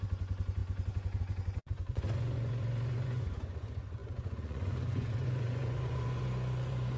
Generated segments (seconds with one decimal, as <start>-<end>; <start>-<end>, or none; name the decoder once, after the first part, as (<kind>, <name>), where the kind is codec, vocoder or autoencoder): 0.0-7.0 (vocoder, Vocos)